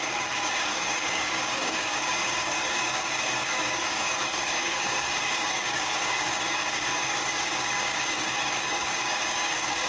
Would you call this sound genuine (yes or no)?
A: no